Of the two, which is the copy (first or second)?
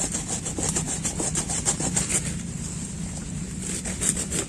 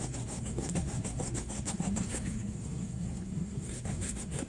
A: second